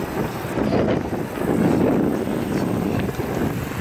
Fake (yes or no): no